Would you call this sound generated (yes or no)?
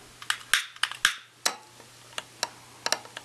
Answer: no